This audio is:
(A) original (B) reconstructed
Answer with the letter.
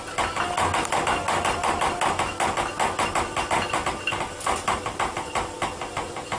A